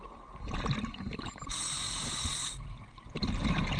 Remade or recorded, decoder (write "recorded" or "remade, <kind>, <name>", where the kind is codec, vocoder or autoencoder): recorded